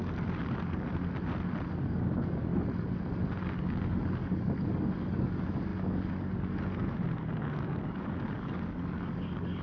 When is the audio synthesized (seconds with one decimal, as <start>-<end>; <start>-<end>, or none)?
0.0-0.9; 1.7-2.5; 3.4-9.6